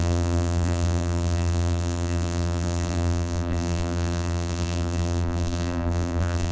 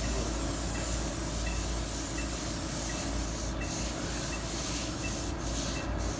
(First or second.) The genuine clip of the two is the second